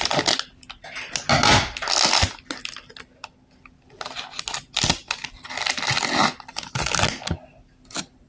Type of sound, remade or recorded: recorded